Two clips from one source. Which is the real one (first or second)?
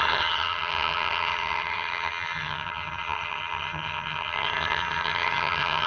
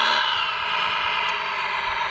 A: second